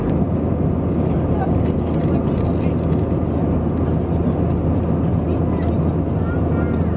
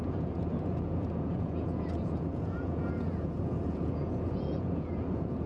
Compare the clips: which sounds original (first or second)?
first